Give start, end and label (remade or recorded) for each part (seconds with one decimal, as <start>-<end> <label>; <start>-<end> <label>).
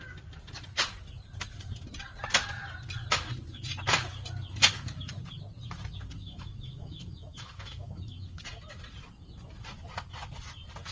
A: 0.0-6.2 recorded; 6.2-8.4 remade; 8.4-10.9 recorded